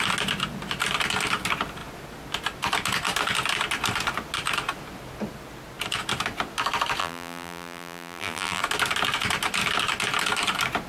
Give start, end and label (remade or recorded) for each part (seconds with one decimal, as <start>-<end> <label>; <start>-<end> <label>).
0.0-7.0 recorded; 7.0-8.6 remade; 8.6-10.9 recorded